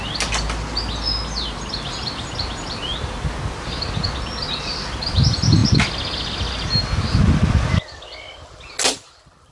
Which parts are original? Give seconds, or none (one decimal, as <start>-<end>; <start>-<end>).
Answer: 0.0-9.5